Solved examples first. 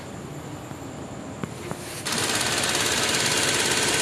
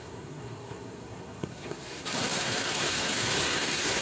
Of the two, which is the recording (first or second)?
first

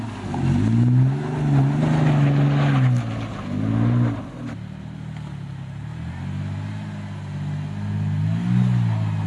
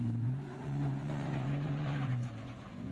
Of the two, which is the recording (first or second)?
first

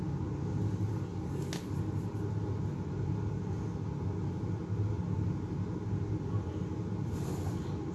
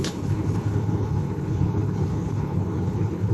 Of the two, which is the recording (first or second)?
first